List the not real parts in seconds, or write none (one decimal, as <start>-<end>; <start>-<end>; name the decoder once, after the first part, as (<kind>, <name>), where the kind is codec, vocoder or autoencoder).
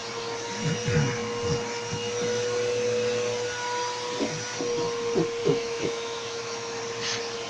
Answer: 5.4-6.8 (autoencoder, DAC-VAE)